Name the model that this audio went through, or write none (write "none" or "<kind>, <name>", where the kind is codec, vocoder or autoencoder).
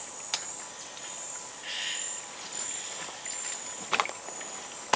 none